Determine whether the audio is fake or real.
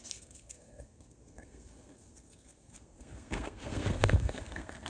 fake